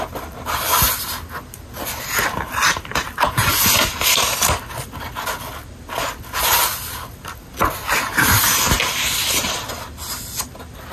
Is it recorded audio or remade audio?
recorded